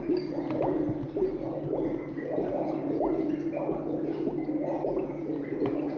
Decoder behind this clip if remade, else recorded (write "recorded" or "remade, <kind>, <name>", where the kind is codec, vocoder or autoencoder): recorded